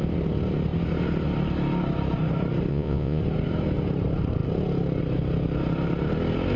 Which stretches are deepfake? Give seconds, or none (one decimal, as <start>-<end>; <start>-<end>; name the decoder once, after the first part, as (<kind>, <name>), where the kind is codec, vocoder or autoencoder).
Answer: 2.7-3.2 (vocoder, Vocos)